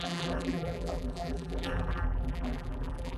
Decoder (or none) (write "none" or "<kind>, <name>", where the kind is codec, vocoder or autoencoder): vocoder, BigVGAN v2